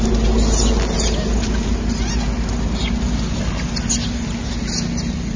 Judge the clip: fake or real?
real